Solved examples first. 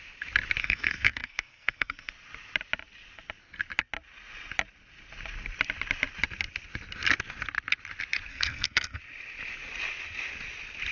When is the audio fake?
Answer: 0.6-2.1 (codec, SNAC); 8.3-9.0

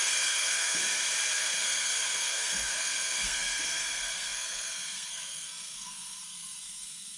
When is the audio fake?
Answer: 0.0-0.8 (codec, SNAC); 1.4-7.2